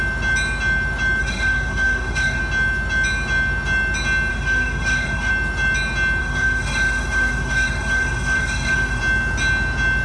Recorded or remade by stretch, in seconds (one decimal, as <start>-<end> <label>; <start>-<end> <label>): 0.0-1.2 recorded; 1.2-2.4 remade; 2.4-4.3 recorded; 4.3-5.3 remade; 5.3-6.2 recorded; 6.2-9.0 remade; 9.0-10.0 recorded